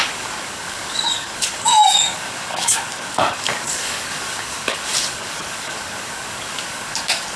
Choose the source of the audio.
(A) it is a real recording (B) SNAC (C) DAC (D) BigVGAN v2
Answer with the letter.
C